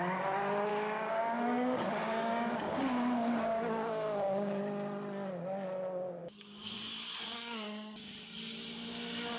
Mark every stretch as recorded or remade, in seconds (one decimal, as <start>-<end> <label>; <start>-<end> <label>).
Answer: 0.0-0.7 recorded; 0.7-4.6 remade; 4.6-6.2 recorded; 6.2-6.8 remade; 6.8-7.2 recorded; 7.2-8.1 remade; 8.1-9.4 recorded